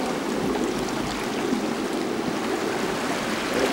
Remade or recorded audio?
recorded